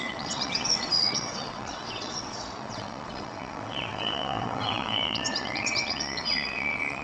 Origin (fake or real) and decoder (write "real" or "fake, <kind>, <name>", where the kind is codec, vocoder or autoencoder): fake, vocoder, WaveNeXt